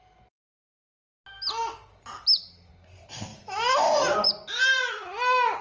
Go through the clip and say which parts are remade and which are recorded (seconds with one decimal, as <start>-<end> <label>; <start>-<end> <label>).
0.0-3.3 recorded; 3.3-4.3 remade; 4.3-5.6 recorded

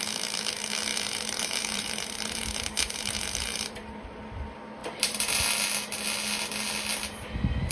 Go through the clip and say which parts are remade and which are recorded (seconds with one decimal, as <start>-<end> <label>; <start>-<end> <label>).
0.0-0.9 recorded; 0.9-4.2 remade; 4.2-4.8 recorded; 4.8-5.4 remade; 5.4-7.7 recorded

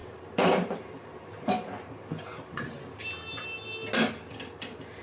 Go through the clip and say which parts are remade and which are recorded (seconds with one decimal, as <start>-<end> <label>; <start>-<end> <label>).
0.0-3.0 remade; 3.0-5.0 recorded

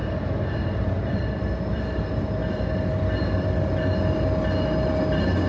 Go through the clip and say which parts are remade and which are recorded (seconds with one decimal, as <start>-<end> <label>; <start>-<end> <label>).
0.0-1.0 recorded; 1.0-2.4 remade; 2.4-5.5 recorded

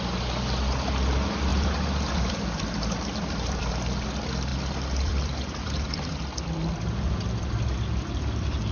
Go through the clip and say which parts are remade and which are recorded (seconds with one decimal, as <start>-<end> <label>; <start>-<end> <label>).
0.0-1.5 recorded; 1.5-3.7 remade; 3.7-4.5 recorded; 4.5-8.7 remade

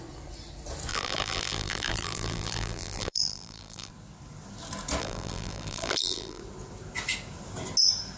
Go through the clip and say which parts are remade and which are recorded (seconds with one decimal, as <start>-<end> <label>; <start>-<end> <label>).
0.0-0.9 recorded; 0.9-3.9 remade; 3.9-5.0 recorded; 5.0-6.4 remade; 6.4-8.2 recorded